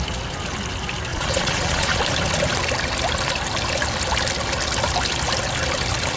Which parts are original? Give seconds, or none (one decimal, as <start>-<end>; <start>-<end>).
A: 0.0-1.1; 2.0-6.2